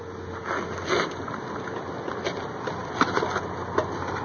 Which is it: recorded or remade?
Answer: recorded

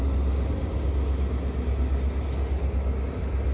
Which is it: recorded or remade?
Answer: recorded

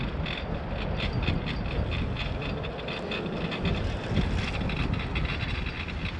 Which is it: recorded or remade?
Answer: recorded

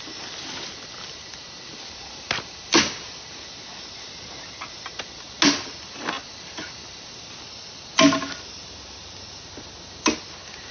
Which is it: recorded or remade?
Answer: recorded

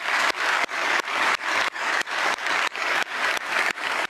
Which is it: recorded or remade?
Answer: remade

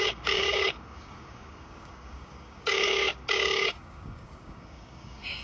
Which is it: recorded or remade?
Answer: remade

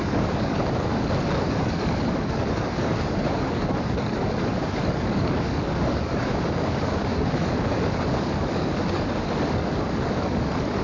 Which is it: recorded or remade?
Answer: remade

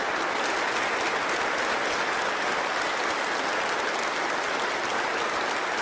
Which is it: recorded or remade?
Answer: recorded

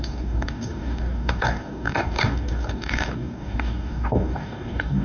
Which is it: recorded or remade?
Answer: remade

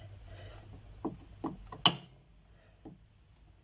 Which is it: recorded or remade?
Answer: recorded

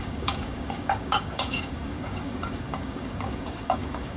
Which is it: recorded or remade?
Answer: remade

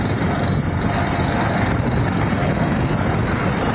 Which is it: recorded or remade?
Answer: recorded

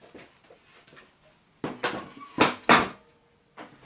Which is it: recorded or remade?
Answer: recorded